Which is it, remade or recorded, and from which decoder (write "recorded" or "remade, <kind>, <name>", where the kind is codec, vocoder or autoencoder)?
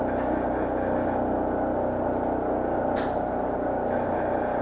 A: recorded